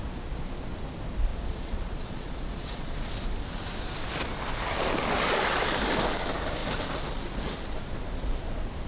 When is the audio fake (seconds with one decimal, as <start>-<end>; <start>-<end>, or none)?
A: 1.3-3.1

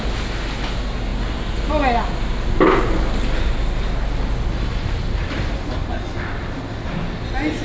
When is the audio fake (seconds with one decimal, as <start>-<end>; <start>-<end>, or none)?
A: none

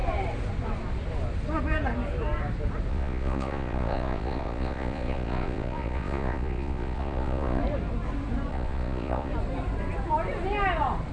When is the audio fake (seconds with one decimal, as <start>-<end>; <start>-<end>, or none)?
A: 2.9-7.6; 8.5-9.3

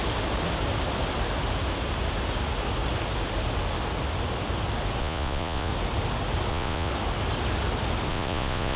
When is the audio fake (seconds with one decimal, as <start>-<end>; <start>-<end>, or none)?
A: 5.0-5.7; 6.5-6.9; 8.1-8.8

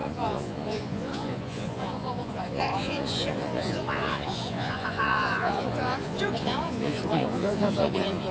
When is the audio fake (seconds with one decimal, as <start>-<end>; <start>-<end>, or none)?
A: 0.0-8.3

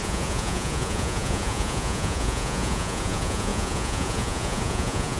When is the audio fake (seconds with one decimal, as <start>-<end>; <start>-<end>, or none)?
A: 0.0-5.2

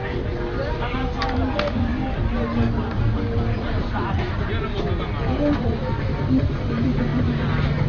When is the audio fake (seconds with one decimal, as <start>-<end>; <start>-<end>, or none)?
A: none